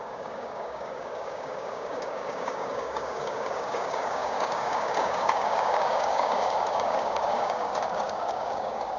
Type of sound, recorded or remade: remade